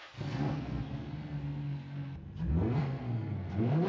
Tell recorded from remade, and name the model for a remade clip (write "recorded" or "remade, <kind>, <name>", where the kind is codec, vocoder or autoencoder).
remade, codec, SNAC